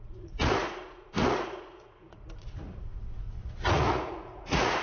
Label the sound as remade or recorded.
remade